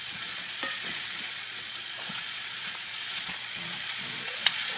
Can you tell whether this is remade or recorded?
remade